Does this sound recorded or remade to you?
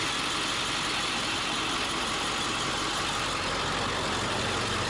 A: recorded